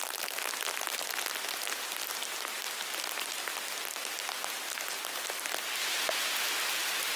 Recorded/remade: recorded